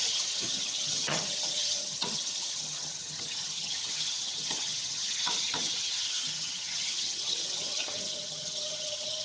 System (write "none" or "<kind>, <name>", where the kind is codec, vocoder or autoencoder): vocoder, HiFi-GAN